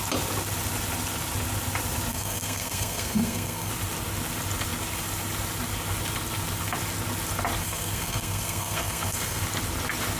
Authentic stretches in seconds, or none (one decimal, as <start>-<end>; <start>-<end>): 0.0-2.1; 3.7-7.6; 9.4-10.2